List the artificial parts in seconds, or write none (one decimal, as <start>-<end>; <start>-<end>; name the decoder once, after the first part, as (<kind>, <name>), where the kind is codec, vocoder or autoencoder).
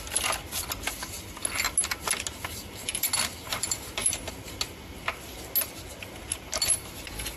3.5-4.3 (vocoder, BigVGAN v2)